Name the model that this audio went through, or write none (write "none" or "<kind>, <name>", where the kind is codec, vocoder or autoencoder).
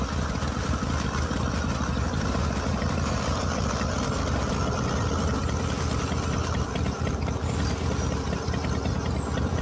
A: none